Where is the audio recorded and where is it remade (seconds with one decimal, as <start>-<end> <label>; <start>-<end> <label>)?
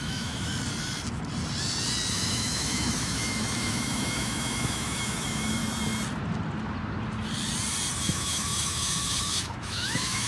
0.0-0.5 remade; 0.5-2.1 recorded; 2.1-5.6 remade; 5.6-8.0 recorded; 8.0-10.3 remade